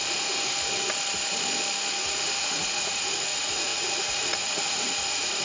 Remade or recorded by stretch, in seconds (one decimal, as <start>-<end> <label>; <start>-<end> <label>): 0.0-2.4 recorded; 2.4-5.4 remade